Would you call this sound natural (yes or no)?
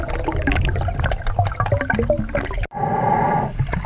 yes